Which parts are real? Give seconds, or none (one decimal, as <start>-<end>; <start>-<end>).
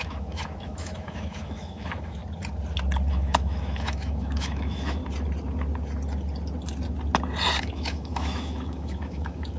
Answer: 2.2-3.1; 5.0-7.6